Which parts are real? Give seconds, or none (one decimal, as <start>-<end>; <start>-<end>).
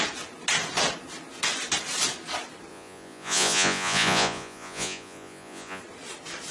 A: 0.0-2.7; 5.8-6.5